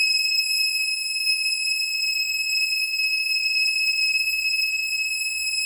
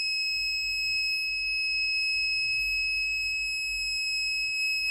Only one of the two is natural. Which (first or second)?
second